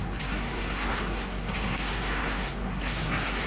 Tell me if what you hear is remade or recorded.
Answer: remade